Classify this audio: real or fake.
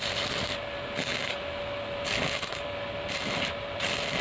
real